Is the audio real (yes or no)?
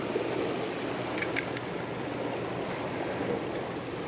yes